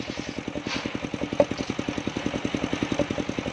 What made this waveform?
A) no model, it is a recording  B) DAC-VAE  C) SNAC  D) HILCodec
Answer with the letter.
A